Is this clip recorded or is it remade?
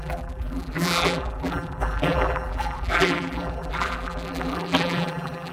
remade